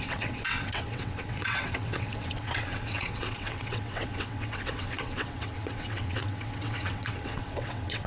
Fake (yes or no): yes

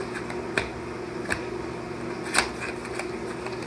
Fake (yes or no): no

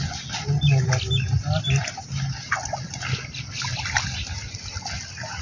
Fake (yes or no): no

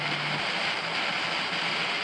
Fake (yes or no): no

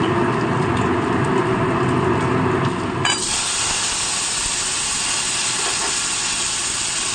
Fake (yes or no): no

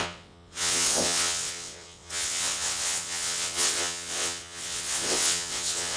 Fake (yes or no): yes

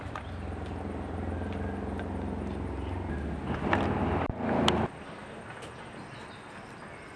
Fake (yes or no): no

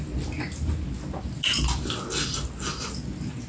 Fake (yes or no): no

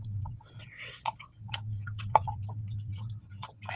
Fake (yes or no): yes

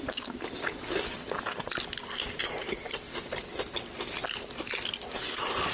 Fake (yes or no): no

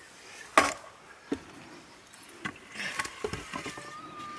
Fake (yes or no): no